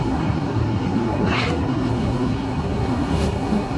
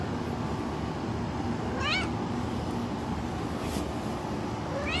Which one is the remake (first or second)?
first